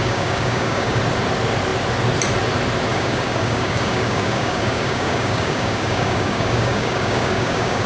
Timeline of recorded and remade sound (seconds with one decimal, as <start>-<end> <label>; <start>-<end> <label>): 0.0-1.0 remade; 1.0-2.9 recorded; 2.9-7.9 remade